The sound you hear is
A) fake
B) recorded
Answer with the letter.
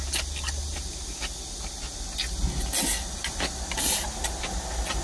B